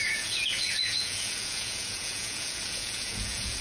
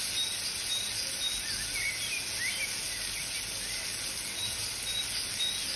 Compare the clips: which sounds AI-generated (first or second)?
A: first